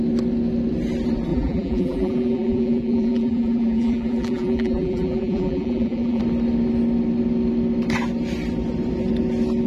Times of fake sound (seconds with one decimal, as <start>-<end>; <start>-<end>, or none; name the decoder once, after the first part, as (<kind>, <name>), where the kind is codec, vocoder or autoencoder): 1.3-6.2 (vocoder, BigVGAN v2)